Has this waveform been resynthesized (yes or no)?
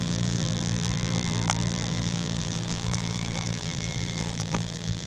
yes